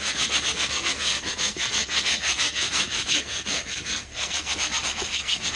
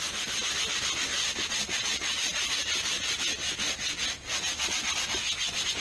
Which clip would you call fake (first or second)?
first